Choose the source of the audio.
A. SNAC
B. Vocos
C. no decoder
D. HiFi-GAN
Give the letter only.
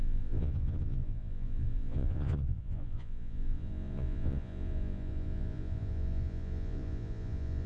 B